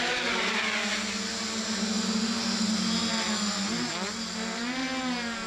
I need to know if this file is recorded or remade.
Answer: recorded